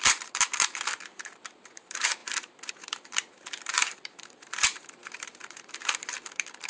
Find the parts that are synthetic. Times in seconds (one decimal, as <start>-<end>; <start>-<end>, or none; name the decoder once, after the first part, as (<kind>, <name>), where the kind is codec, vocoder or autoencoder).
0.0-6.7 (vocoder, BigVGAN v2)